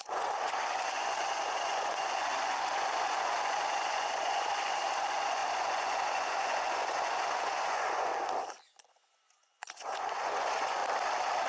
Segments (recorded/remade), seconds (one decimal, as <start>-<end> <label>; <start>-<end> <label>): 0.0-8.1 remade; 8.1-8.9 recorded; 8.9-10.8 remade; 10.8-11.5 recorded